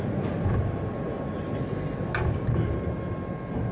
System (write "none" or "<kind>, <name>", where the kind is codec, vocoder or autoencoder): none